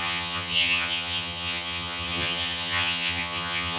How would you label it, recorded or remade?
remade